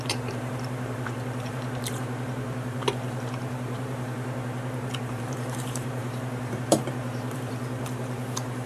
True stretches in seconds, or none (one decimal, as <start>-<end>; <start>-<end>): none